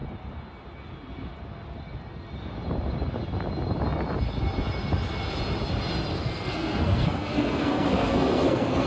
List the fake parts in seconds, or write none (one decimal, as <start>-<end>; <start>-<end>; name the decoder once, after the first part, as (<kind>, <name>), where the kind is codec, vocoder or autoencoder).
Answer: 6.1-8.9 (codec, SNAC)